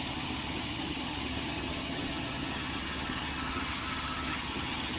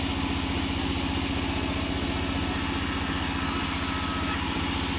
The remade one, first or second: first